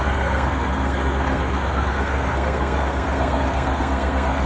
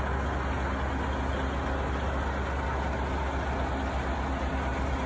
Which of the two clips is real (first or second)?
second